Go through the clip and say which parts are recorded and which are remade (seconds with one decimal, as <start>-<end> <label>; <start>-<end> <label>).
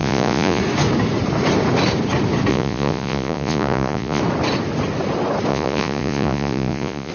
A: 0.0-0.6 remade; 0.6-2.5 recorded; 2.5-4.2 remade; 4.2-5.5 recorded; 5.5-7.1 remade